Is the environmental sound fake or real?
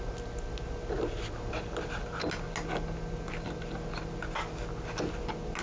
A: real